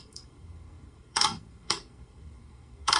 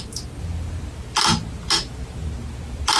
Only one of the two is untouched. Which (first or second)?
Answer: second